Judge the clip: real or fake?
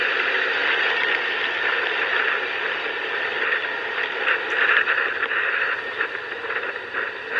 fake